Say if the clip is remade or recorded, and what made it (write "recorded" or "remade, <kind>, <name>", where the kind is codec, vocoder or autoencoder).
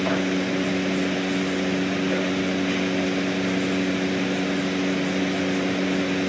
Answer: recorded